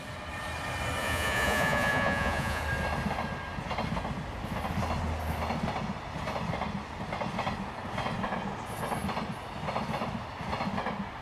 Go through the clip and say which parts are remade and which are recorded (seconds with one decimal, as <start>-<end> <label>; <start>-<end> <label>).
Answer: 0.0-1.0 recorded; 1.0-2.6 remade; 2.6-11.2 recorded